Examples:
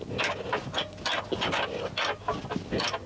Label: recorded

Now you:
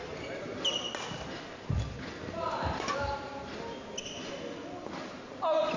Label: recorded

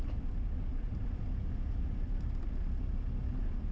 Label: recorded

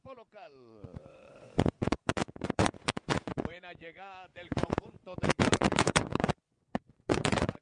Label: remade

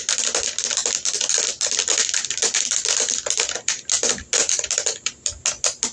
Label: recorded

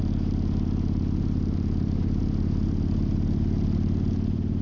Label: recorded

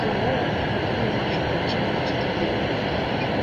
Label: recorded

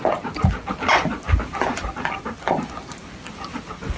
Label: recorded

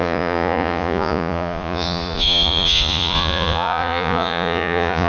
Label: remade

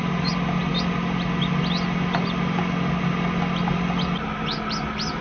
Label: recorded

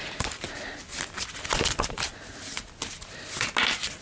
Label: recorded